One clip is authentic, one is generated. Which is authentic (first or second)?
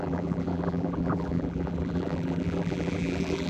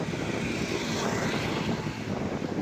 second